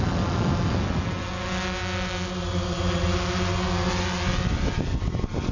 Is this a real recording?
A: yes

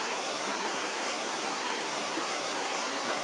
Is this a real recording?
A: no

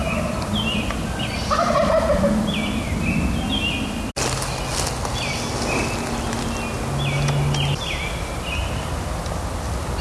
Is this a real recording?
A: yes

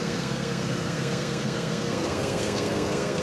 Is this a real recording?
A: no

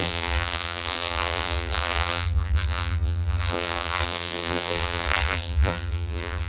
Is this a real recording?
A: no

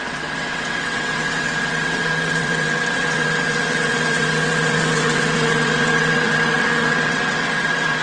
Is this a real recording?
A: no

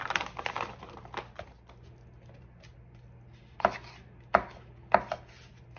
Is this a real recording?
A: yes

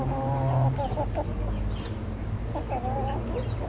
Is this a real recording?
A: yes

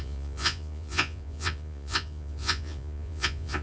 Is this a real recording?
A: no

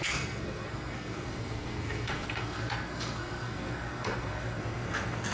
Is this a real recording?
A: no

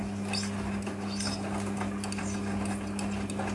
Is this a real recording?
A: yes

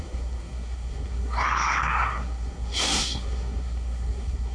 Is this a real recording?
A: no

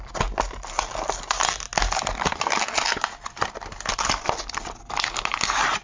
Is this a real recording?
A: yes